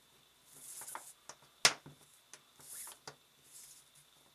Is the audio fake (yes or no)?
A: no